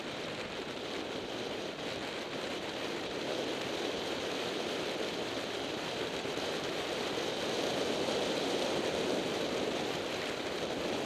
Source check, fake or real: fake